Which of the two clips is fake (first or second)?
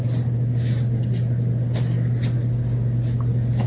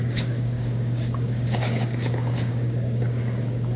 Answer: second